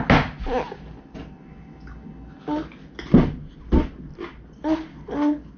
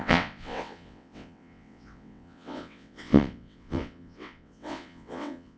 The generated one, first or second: second